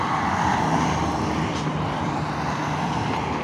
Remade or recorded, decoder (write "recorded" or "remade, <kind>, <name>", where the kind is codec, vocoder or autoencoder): recorded